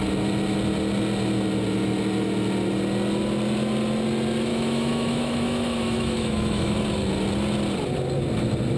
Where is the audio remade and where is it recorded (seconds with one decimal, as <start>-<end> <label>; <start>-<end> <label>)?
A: 0.0-4.5 recorded; 4.5-6.8 remade; 6.8-8.8 recorded